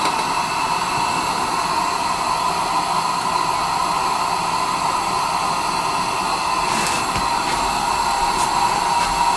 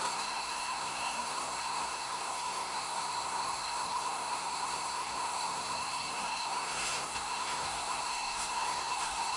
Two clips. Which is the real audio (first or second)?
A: first